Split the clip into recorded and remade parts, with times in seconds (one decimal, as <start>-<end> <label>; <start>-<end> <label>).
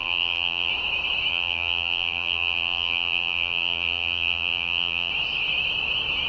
0.0-0.7 remade; 0.7-1.3 recorded; 1.3-5.1 remade; 5.1-6.3 recorded